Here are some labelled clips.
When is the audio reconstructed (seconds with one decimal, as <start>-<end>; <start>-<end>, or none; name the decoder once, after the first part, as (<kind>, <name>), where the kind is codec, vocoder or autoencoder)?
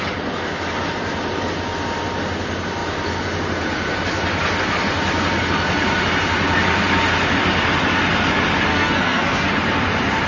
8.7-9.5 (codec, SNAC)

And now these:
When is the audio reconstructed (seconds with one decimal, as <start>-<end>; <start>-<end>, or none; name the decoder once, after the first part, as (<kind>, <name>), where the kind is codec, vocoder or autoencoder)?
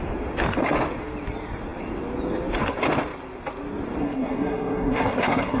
4.0-5.6 (codec, SNAC)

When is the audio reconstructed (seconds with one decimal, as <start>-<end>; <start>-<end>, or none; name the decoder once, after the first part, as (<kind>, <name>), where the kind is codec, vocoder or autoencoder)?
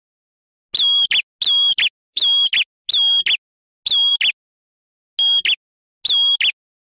none